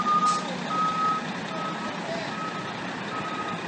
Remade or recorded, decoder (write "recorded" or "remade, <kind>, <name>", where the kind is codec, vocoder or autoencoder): recorded